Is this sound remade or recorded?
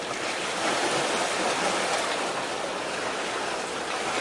recorded